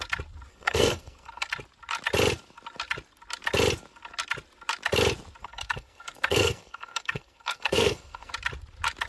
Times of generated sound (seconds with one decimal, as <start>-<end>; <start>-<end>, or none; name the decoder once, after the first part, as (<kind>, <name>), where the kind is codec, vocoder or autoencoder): 0.5-1.5 (codec, SNAC); 5.4-8.3